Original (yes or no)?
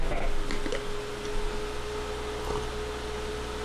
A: yes